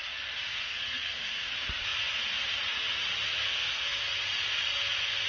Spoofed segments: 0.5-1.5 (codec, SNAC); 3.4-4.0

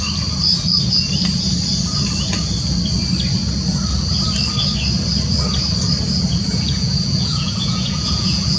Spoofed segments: 6.5-8.6 (vocoder, Vocos)

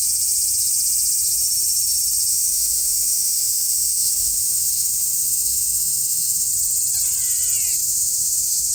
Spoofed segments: 2.3-6.5 (autoencoder, DAC-VAE); 7.8-8.7

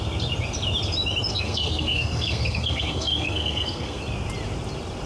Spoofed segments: 1.3-4.0 (codec, SNAC)